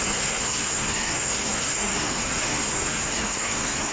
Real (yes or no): no